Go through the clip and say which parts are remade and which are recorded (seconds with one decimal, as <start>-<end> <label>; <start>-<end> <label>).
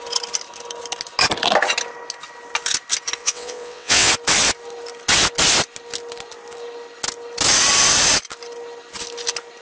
0.0-3.2 recorded; 3.2-4.1 remade; 4.1-9.6 recorded